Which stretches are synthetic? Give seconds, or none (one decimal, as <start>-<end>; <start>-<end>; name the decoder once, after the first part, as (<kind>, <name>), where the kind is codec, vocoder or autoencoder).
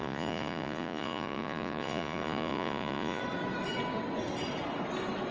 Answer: 0.0-3.2 (vocoder, Vocos)